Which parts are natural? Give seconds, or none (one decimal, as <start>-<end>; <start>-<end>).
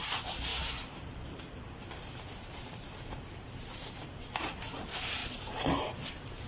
5.2-6.1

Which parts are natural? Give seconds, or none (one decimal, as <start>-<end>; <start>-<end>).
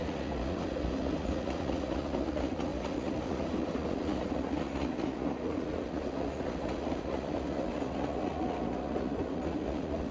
none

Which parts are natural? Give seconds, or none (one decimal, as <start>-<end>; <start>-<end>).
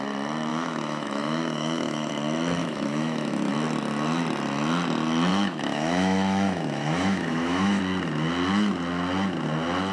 0.0-0.5; 2.1-2.6; 3.5-5.3; 7.8-9.9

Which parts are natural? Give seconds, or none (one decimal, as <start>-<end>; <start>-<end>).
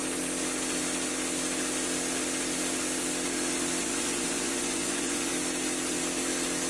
0.0-3.8; 5.3-6.7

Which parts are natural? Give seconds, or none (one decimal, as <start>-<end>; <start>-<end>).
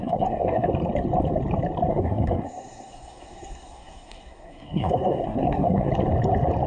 0.7-1.9; 5.9-6.7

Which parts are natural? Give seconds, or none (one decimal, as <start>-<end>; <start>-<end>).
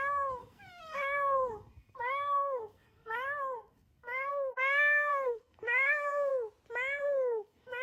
6.3-7.0